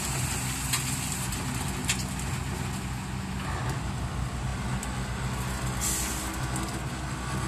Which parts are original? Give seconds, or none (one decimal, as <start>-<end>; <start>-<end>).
0.0-7.5